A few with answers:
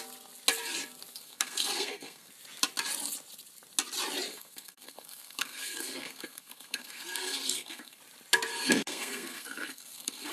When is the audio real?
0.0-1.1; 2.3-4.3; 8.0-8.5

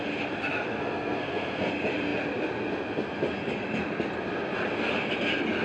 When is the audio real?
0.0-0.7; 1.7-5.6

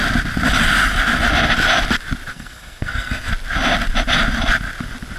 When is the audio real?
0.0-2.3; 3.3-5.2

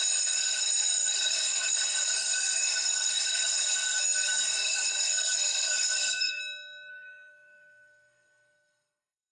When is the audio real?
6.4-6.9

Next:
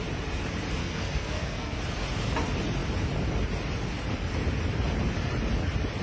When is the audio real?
0.0-0.8; 1.8-6.0

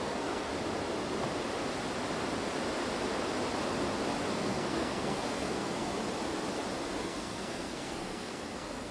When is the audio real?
0.5-4.3; 6.0-7.0

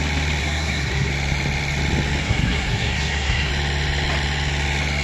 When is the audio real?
0.0-0.4; 1.1-2.2; 3.5-5.0